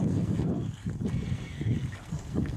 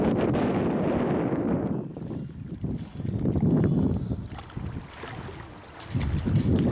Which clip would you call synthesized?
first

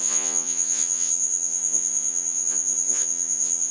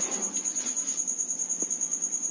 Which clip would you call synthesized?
first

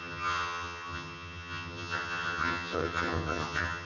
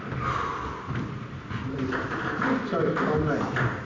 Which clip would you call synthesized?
first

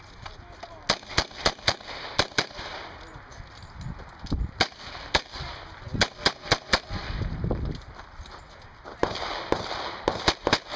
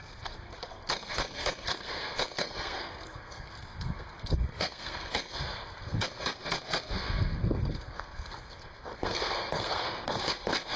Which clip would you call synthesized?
second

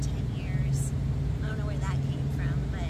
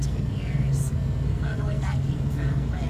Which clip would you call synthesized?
second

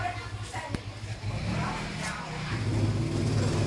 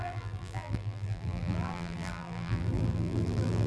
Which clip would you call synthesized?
second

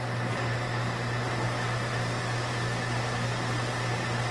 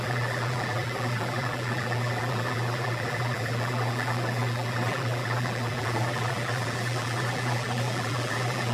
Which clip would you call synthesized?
second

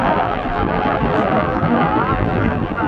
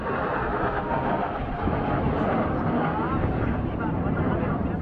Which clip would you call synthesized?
first